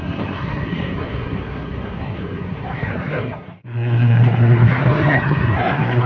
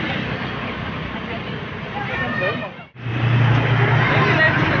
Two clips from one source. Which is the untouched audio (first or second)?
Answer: second